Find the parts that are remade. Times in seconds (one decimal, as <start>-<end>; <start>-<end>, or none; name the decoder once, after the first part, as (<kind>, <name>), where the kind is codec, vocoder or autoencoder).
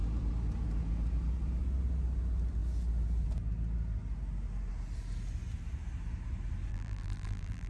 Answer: 6.7-7.7 (vocoder, BigVGAN v2)